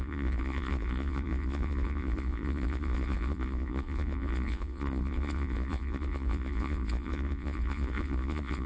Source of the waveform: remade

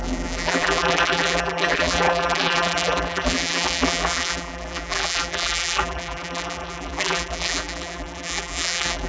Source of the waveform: remade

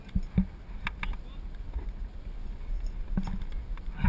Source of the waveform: recorded